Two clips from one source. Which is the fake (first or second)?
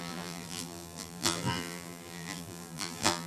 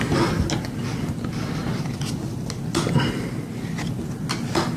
first